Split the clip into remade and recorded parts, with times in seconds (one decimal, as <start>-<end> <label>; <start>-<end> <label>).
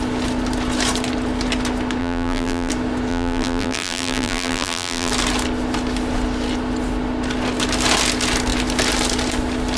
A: 0.0-2.0 recorded; 2.0-2.7 remade; 2.7-3.1 recorded; 3.1-5.1 remade; 5.1-9.8 recorded